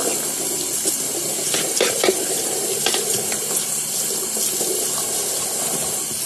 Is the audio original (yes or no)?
yes